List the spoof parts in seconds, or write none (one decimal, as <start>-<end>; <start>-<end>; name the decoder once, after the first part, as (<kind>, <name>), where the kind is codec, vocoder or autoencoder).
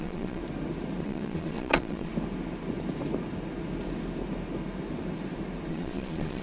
0.0-0.4 (vocoder, Vocos); 1.0-2.1; 5.7-6.4